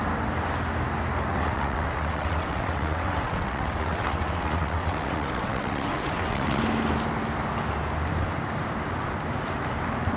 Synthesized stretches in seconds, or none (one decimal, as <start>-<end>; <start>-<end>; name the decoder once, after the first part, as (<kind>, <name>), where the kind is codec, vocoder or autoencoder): 1.3-6.6 (vocoder, WaveNeXt)